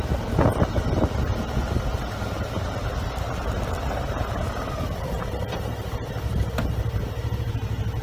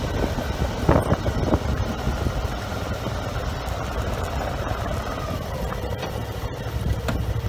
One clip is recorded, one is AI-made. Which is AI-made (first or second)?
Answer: second